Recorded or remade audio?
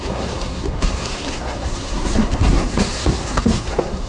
remade